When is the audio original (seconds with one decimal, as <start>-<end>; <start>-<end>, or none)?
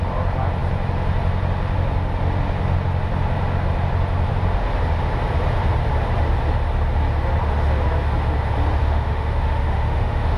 0.0-8.8